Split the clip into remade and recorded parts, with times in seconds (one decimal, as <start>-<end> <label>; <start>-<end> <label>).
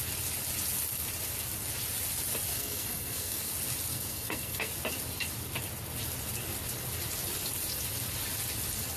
0.0-2.5 recorded; 2.5-3.5 remade; 3.5-3.9 recorded; 3.9-4.7 remade; 4.7-9.0 recorded